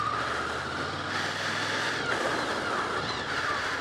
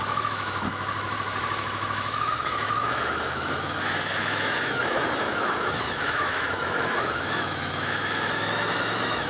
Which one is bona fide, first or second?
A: first